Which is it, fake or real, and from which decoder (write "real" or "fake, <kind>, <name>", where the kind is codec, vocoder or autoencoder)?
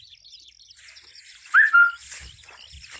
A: real